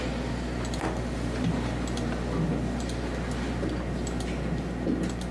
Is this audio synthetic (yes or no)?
no